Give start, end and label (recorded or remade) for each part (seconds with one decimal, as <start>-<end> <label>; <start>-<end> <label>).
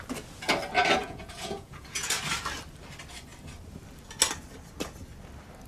0.0-1.0 recorded; 1.0-2.2 remade; 2.2-5.7 recorded